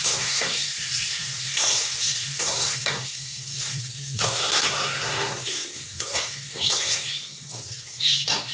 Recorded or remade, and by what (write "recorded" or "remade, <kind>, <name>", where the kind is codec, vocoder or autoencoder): remade, codec, SNAC